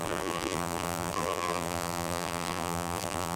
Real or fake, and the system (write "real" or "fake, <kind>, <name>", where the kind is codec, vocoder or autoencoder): fake, vocoder, BigVGAN v2